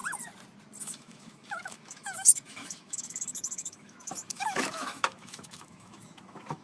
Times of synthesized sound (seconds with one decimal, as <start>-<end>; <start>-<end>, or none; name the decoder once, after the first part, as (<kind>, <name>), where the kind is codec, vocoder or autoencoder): 0.8-6.6 (autoencoder, DAC-VAE)

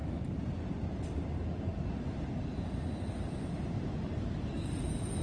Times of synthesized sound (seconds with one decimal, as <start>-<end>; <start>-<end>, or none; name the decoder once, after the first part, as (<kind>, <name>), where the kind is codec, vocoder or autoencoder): none

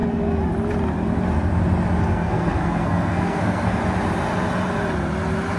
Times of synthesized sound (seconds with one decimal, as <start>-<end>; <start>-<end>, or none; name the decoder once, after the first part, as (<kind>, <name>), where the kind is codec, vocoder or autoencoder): 2.1-3.8 (codec, SNAC)

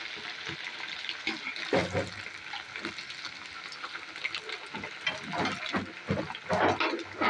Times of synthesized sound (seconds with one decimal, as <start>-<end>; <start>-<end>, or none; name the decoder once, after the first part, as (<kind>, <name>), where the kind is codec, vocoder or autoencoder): none

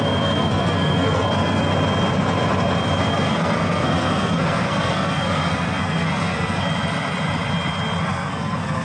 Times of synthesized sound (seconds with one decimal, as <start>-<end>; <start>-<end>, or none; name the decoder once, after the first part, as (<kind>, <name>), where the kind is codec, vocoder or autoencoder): 0.0-1.7 (codec, SNAC); 3.0-6.6; 8.0-8.8

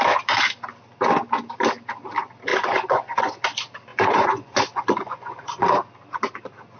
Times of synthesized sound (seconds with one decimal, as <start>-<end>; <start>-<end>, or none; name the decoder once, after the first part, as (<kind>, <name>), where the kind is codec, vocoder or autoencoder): 2.5-3.2 (vocoder, Vocos); 3.9-5.7

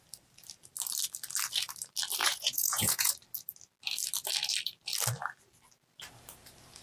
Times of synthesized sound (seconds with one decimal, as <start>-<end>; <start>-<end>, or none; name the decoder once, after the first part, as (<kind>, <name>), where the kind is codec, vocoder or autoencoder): 2.2-3.1 (vocoder, Vocos)

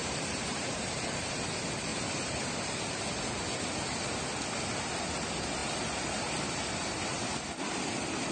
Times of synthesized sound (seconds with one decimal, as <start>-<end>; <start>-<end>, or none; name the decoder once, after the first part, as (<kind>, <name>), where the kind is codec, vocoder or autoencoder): 0.0-1.3 (vocoder, BigVGAN v2); 1.9-2.7